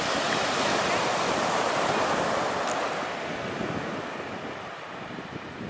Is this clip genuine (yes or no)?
yes